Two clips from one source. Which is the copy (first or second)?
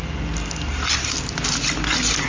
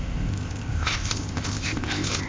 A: second